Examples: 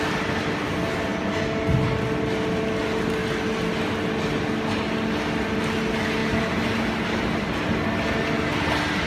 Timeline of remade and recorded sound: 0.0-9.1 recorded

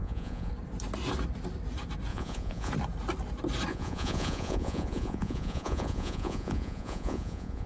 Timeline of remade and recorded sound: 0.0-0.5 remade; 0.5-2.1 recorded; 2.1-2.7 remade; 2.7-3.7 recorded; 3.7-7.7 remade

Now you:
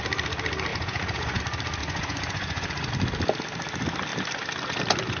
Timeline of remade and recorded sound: 0.0-0.7 recorded; 0.7-1.4 remade; 1.4-1.8 recorded; 1.8-2.9 remade; 2.9-5.2 recorded

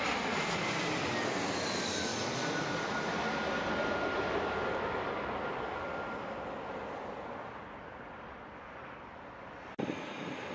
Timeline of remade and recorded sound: 0.0-10.5 recorded